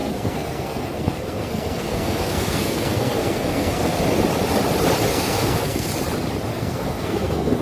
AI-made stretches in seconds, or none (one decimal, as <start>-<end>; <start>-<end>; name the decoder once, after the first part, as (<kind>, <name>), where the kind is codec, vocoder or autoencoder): 0.0-4.0 (codec, SNAC); 5.1-5.9; 6.5-7.6